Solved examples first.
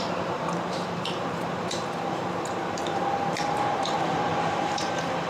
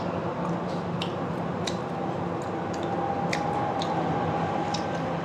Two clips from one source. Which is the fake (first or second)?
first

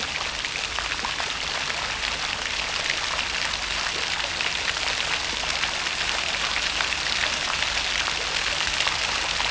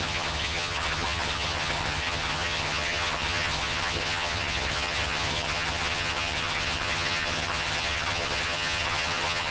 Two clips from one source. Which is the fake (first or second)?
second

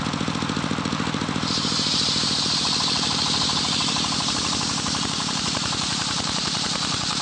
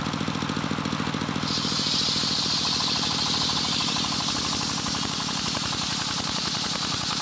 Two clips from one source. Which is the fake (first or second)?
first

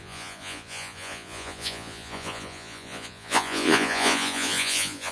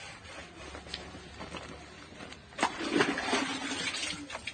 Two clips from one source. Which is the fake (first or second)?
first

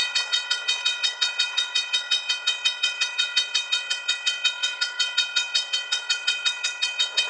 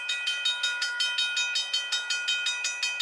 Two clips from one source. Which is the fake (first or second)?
first